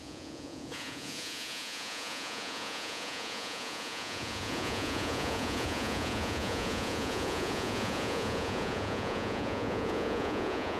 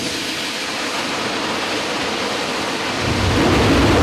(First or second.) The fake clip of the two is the first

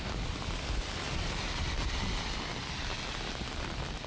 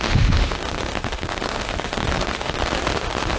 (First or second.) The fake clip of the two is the second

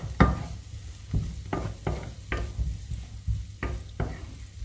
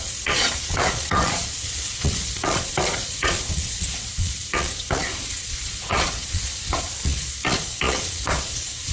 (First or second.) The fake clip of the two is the second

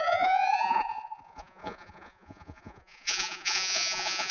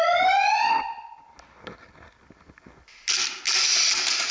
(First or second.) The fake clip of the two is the first